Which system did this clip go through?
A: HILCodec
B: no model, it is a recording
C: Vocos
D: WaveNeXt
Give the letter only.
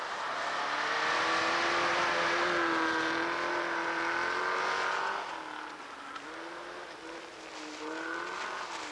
B